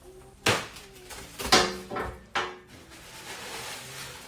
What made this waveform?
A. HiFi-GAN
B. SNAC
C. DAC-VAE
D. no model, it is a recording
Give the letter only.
D